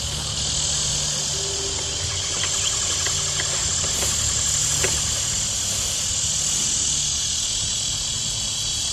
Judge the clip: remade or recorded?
recorded